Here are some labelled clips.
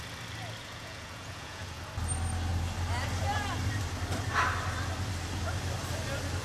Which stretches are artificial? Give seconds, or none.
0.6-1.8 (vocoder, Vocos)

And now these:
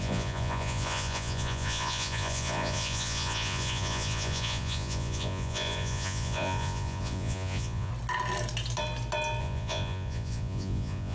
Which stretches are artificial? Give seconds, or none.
0.0-7.9 (vocoder, Vocos); 9.4-11.1

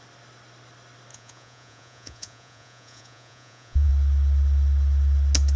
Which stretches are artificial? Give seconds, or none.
1.1-3.9 (vocoder, Vocos)